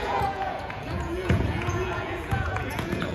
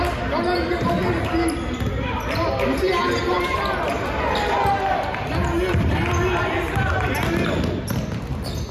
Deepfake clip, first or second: first